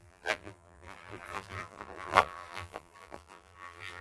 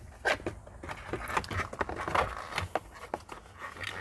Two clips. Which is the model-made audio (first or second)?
first